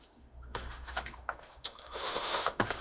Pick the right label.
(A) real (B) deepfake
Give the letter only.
B